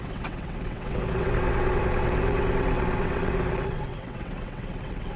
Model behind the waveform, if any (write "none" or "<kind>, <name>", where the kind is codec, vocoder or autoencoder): vocoder, WaveNeXt